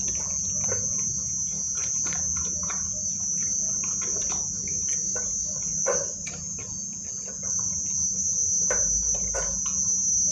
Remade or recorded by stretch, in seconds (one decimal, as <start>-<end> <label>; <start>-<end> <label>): 0.0-5.7 recorded; 5.7-6.3 remade; 6.3-10.3 recorded